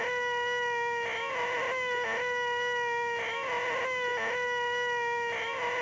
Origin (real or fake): real